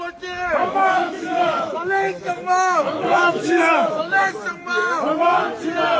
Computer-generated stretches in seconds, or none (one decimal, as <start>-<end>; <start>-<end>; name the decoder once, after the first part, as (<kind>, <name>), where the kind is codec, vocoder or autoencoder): 0.6-4.2 (autoencoder, DAC-VAE)